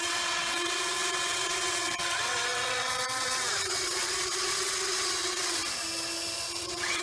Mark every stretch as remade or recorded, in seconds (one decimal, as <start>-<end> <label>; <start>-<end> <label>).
0.0-5.6 remade; 5.6-6.6 recorded; 6.6-7.0 remade